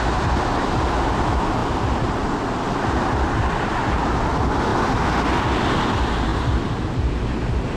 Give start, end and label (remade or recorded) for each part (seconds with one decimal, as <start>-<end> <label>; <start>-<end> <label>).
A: 0.0-7.8 recorded